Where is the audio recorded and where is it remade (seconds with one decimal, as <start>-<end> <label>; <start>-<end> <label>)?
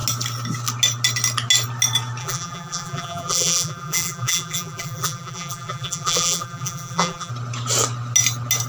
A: 0.0-2.2 recorded; 2.2-7.3 remade; 7.3-8.7 recorded